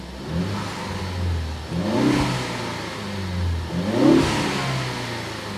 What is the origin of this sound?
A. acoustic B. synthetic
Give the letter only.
A